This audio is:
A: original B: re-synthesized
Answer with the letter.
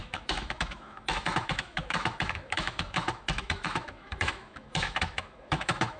B